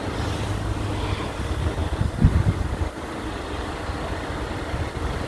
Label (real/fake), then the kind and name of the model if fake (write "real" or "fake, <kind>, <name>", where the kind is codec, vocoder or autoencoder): real